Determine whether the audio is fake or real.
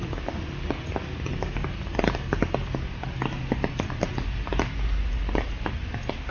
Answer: real